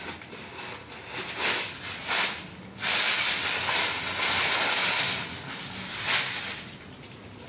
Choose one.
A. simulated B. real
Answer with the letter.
B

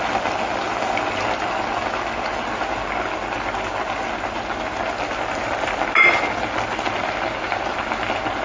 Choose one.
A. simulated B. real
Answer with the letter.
B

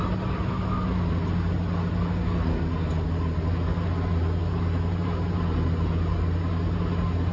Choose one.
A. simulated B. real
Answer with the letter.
B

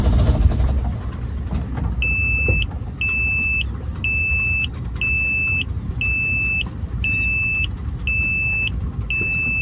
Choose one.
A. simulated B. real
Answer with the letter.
B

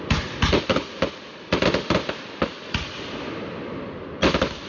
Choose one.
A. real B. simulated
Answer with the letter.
A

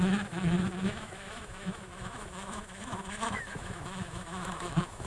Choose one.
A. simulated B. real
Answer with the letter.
A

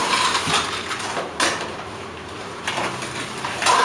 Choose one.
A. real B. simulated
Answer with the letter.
B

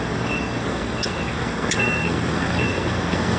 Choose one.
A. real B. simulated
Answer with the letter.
B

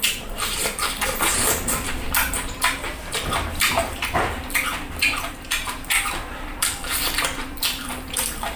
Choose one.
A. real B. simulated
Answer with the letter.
B